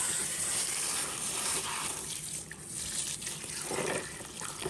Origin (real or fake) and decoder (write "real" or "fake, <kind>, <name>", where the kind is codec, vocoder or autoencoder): fake, vocoder, BigVGAN v2